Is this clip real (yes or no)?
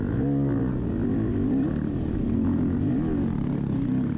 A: yes